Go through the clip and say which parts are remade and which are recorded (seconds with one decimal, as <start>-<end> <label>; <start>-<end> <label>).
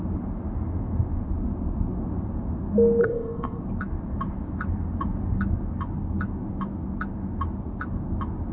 0.0-3.0 recorded; 3.0-3.6 remade; 3.6-8.5 recorded